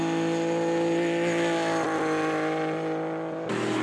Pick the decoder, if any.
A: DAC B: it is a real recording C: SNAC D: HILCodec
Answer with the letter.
B